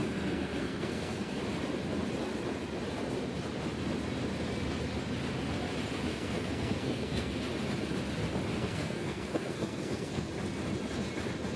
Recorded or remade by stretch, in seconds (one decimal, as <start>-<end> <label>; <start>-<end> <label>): 0.0-1.4 remade; 1.4-6.1 recorded; 6.1-7.3 remade; 7.3-8.5 recorded; 8.5-10.3 remade; 10.3-11.6 recorded

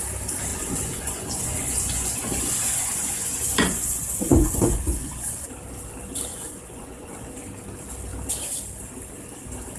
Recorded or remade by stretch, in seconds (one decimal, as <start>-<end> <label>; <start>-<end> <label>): 0.0-0.5 recorded; 0.5-5.5 remade; 5.5-6.3 recorded; 6.3-7.3 remade; 7.3-9.8 recorded

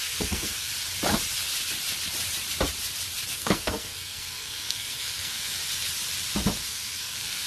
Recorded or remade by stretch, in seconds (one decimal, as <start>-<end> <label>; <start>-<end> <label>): 0.0-0.7 remade; 0.7-3.3 recorded; 3.3-5.6 remade; 5.6-6.6 recorded; 6.6-7.5 remade

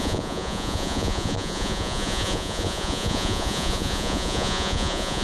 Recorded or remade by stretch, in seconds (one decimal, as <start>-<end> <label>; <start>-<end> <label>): 0.0-5.2 remade

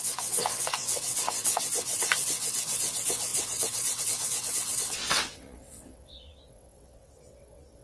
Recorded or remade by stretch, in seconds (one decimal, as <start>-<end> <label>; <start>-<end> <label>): 0.0-7.8 remade

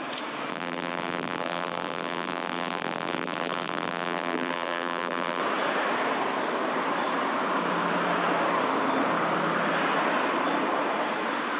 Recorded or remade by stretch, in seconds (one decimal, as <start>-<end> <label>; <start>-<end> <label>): 0.0-0.5 recorded; 0.5-5.4 remade; 5.4-11.6 recorded

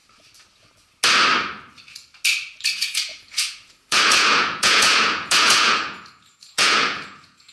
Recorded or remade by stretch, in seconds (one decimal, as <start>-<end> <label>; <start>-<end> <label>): 0.0-2.7 recorded; 2.7-7.5 remade

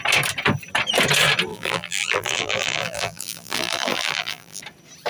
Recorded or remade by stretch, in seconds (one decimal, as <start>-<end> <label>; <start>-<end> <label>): 0.0-1.5 recorded; 1.5-4.6 remade; 4.6-5.1 recorded